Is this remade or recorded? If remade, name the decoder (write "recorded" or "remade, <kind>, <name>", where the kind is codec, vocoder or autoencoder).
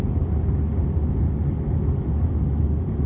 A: recorded